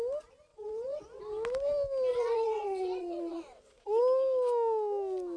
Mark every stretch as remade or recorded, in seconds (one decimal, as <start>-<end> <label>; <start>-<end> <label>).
0.0-0.5 recorded; 0.5-1.2 remade; 1.2-2.1 recorded; 2.1-4.0 remade; 4.0-5.4 recorded